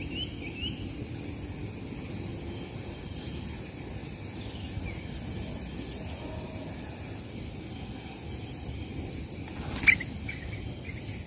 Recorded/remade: recorded